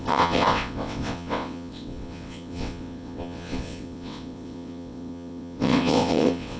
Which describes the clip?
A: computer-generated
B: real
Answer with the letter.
A